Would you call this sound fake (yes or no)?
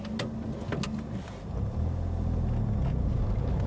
no